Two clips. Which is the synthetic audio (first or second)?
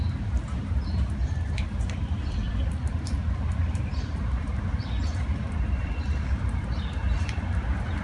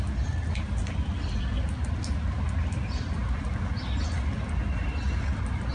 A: first